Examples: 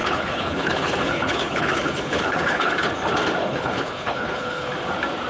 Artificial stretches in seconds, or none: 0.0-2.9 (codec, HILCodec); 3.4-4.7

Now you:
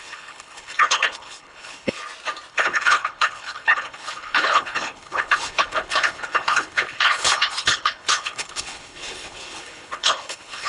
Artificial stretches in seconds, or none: 0.0-2.0 (codec, HILCodec); 2.5-10.7

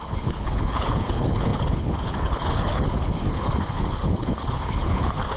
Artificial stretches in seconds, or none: 0.0-5.4 (codec, HILCodec)

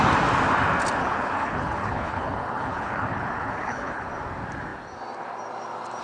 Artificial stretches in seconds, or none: 1.0-4.1 (codec, HILCodec)

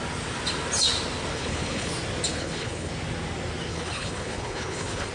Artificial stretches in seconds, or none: 1.3-1.9 (codec, HILCodec); 2.3-2.9; 3.7-5.1